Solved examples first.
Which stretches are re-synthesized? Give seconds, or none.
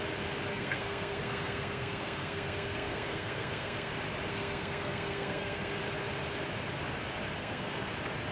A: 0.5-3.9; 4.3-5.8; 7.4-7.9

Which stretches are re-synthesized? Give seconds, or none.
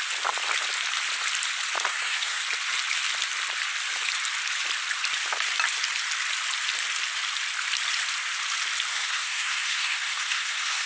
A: 1.9-2.4; 8.9-10.9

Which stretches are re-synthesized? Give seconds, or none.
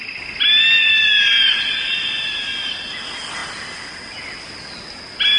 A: none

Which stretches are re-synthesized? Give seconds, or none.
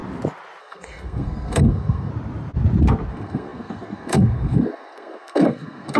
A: 0.6-2.1; 3.1-6.0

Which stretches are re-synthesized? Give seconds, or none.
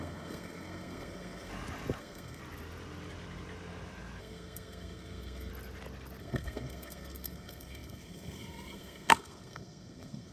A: 0.0-1.5; 2.0-2.4; 4.2-5.5; 6.2-10.3